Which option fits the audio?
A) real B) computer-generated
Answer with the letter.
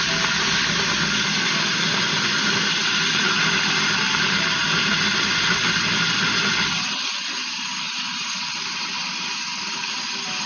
A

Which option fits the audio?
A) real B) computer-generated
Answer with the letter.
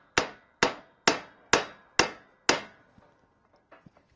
A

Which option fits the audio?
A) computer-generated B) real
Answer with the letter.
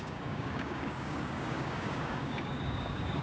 A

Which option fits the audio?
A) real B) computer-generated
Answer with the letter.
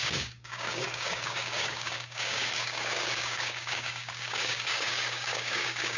B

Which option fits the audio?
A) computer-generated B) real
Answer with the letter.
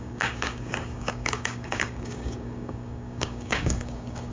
A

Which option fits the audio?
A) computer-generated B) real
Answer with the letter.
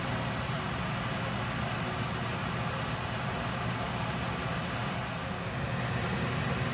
B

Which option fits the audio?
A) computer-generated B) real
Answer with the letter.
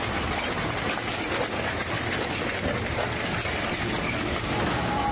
B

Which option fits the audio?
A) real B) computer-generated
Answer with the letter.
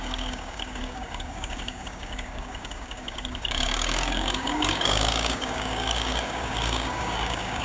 B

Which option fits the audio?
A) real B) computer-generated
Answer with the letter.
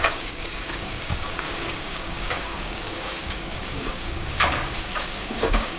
B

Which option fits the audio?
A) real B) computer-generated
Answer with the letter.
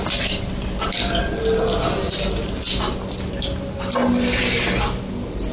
A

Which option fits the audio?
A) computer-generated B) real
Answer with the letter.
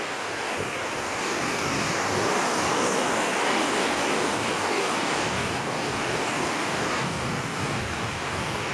A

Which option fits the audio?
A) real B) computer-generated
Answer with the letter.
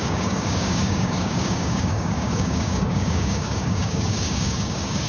B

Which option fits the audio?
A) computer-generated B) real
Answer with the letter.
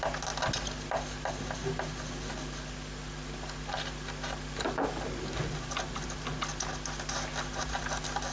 B